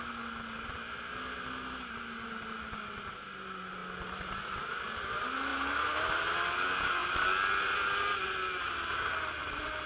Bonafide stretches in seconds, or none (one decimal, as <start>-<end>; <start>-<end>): 0.0-9.9